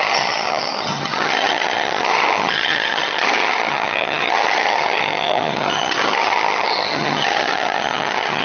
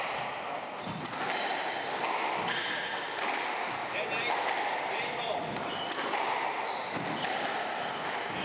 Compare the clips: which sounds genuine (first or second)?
second